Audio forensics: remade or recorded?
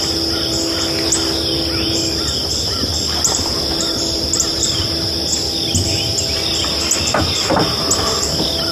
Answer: recorded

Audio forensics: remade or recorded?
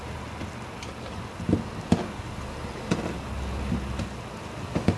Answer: recorded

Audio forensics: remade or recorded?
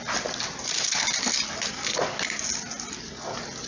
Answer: recorded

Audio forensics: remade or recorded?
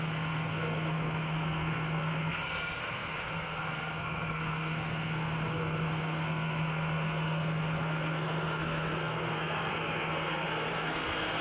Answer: remade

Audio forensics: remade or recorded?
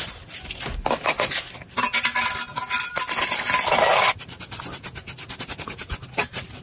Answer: recorded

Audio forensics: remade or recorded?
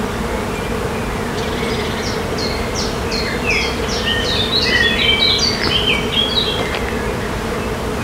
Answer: recorded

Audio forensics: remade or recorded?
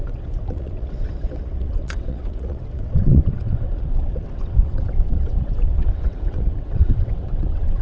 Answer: remade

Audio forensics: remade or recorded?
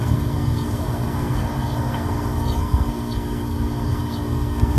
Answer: remade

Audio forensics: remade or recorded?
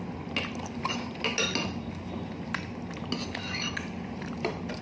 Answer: recorded